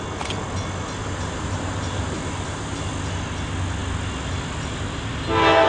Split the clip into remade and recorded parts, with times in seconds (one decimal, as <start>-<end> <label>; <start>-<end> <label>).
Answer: 0.0-1.0 recorded; 1.0-2.9 remade; 2.9-5.7 recorded